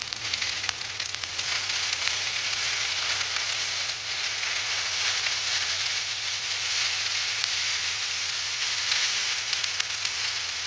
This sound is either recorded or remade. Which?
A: remade